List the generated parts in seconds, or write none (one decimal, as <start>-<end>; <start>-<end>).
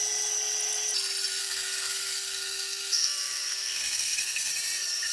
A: 1.4-4.5